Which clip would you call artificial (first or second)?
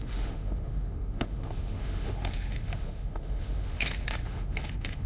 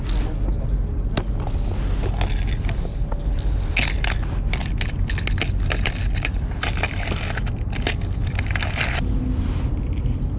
first